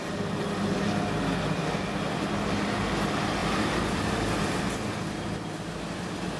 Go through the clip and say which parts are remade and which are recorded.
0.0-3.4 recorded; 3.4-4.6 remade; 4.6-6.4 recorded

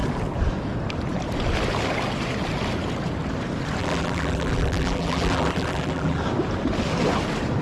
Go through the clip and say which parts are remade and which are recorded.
0.0-3.8 recorded; 3.8-6.2 remade; 6.2-7.6 recorded

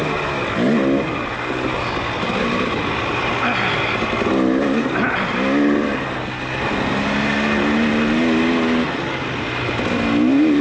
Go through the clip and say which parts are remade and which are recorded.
0.0-10.6 recorded

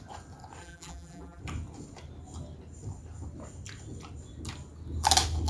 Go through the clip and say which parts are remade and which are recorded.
0.0-0.6 recorded; 0.6-1.4 remade; 1.4-5.5 recorded

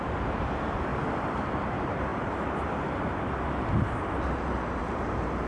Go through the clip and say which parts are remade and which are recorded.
0.0-0.9 remade; 0.9-1.6 recorded; 1.6-2.1 remade; 2.1-4.8 recorded; 4.8-5.5 remade

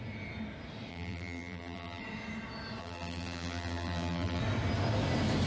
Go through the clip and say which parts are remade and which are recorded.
0.0-0.9 recorded; 0.9-2.0 remade; 2.0-2.8 recorded; 2.8-4.4 remade; 4.4-5.5 recorded